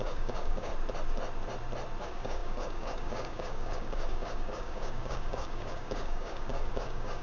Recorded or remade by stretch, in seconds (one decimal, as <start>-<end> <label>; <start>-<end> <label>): 0.0-0.7 remade; 0.7-2.0 recorded; 2.0-7.2 remade